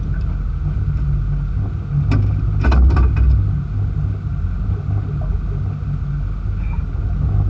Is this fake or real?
real